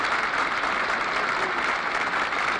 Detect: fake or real real